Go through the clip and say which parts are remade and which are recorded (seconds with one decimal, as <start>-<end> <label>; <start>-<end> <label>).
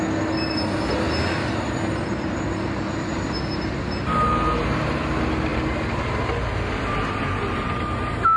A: 0.0-8.4 recorded